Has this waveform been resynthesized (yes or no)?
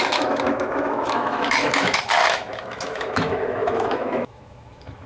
yes